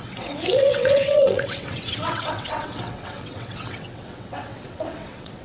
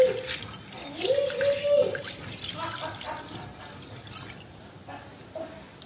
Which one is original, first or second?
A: second